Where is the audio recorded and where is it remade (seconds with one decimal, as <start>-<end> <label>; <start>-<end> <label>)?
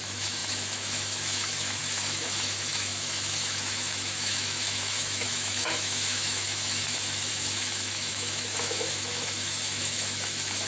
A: 0.0-10.7 remade